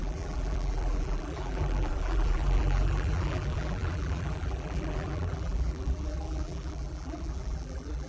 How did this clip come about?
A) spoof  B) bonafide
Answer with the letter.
A